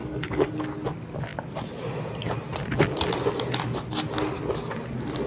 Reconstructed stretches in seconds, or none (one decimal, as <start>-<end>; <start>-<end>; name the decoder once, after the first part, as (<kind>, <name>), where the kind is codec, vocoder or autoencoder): 0.0-0.5 (codec, DAC)